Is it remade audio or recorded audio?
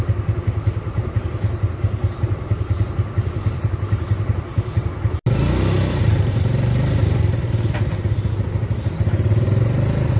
recorded